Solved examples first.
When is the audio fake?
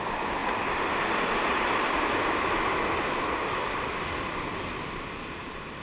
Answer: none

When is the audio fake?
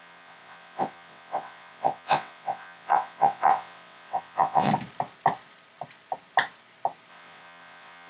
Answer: 0.0-4.7; 7.1-8.1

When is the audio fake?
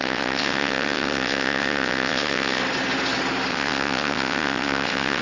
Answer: 0.0-2.6; 3.5-5.2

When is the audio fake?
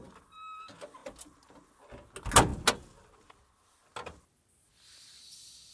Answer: none